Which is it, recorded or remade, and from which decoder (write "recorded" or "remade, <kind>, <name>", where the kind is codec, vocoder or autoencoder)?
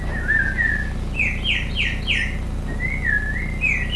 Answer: recorded